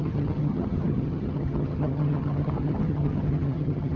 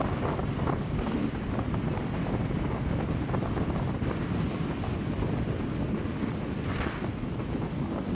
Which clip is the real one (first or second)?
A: second